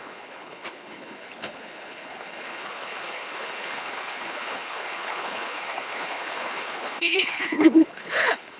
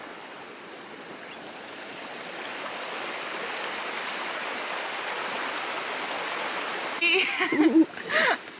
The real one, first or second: second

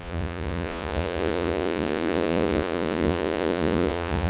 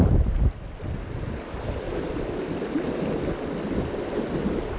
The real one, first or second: second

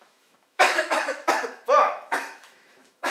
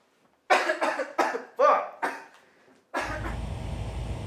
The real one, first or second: second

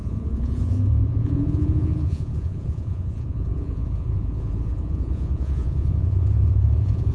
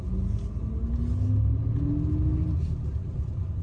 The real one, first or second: second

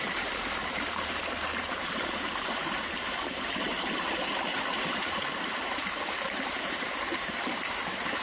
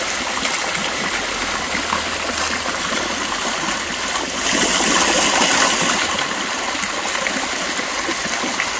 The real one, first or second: second